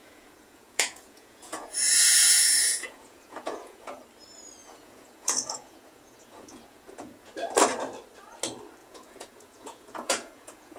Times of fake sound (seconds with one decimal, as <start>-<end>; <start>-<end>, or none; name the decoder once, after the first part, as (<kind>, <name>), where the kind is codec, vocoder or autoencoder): 0.0-4.0 (vocoder, Vocos); 4.6-7.3; 8.8-10.8